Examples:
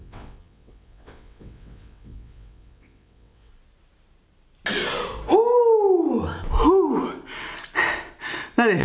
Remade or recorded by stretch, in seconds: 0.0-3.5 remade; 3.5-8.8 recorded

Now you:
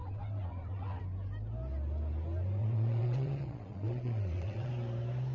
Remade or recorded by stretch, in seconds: 0.0-1.0 remade; 1.0-2.6 recorded; 2.6-4.7 remade; 4.7-5.3 recorded